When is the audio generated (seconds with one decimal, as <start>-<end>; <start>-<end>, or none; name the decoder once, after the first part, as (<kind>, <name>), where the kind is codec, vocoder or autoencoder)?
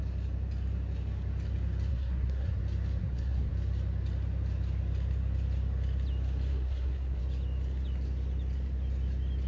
1.9-2.6 (codec, SNAC); 3.0-3.5; 6.5-7.2